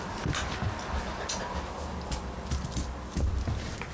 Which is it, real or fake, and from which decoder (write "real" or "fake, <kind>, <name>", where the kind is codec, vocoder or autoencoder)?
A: real